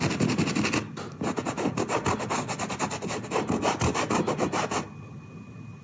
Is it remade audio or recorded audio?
recorded